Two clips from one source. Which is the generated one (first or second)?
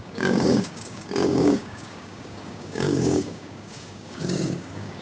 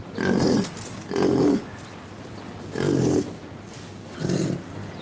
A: first